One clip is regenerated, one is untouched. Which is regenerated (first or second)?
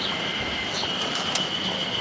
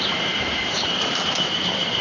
second